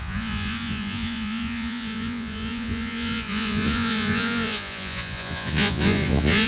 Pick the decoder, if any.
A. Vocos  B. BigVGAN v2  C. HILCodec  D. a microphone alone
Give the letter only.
A